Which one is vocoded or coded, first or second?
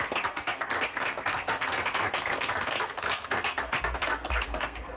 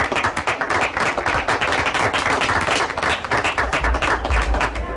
first